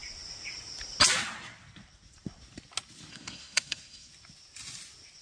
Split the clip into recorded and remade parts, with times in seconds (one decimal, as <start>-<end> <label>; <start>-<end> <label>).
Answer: 0.0-3.1 recorded; 3.1-4.1 remade; 4.1-5.2 recorded